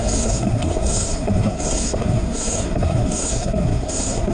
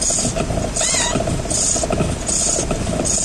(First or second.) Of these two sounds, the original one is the second